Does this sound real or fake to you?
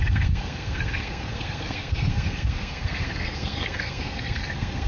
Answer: fake